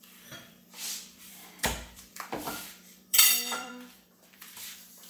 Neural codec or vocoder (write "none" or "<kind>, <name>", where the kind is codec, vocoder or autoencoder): vocoder, BigVGAN v2